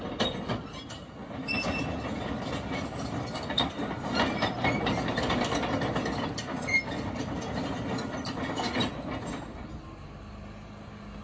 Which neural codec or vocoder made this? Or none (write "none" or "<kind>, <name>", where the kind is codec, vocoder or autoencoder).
none